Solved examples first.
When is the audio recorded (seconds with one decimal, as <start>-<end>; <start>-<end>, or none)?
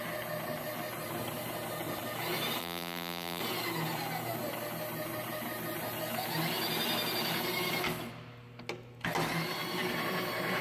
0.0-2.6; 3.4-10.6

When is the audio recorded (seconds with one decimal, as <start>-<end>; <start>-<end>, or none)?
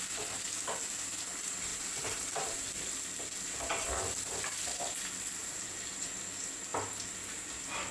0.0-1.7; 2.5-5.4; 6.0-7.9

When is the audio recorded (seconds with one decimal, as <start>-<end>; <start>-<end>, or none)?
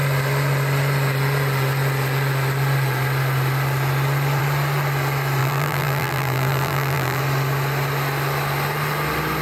0.0-5.4; 7.2-9.4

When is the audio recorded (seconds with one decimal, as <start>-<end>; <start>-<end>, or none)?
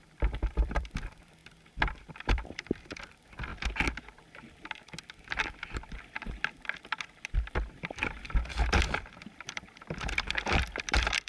1.4-2.1; 3.5-7.7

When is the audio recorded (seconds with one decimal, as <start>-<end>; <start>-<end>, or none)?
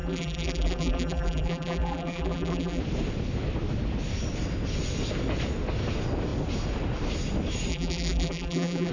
2.8-7.7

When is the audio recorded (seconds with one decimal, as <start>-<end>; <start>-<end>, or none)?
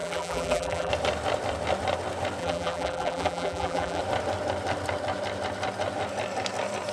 0.9-2.4; 4.0-6.9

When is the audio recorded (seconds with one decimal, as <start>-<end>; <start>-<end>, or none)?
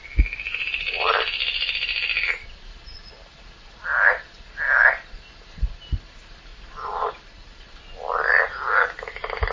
0.0-0.5; 1.1-6.5; 7.2-9.5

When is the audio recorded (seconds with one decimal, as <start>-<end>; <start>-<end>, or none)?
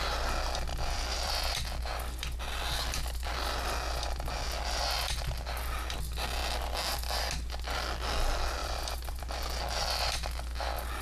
0.0-0.7; 1.3-8.6; 9.2-11.0